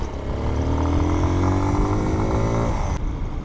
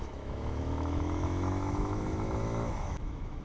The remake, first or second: second